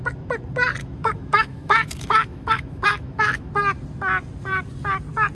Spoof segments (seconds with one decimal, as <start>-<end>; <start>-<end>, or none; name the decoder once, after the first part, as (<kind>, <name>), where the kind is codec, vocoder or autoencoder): 0.8-3.5 (autoencoder, DAC-VAE)